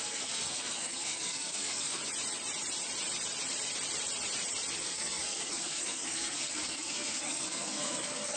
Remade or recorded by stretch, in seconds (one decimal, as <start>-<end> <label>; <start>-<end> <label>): 0.0-2.0 remade; 2.0-4.8 recorded; 4.8-8.4 remade